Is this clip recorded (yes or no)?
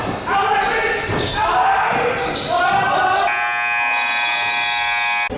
yes